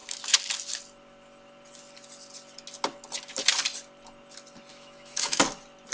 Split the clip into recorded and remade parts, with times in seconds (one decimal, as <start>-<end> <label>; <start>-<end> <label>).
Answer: 0.0-4.7 recorded; 4.7-5.4 remade; 5.4-5.9 recorded